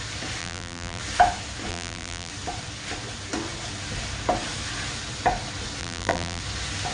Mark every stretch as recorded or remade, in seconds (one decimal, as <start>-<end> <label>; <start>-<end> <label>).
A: 0.0-0.4 recorded; 0.4-1.0 remade; 1.0-1.7 recorded; 1.7-2.3 remade; 2.3-5.8 recorded; 5.8-6.4 remade; 6.4-6.9 recorded